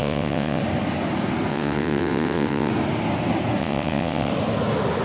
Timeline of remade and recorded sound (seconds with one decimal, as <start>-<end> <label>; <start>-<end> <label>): 0.0-0.6 remade; 0.6-1.5 recorded; 1.5-2.7 remade; 2.7-3.6 recorded; 3.6-4.3 remade; 4.3-5.0 recorded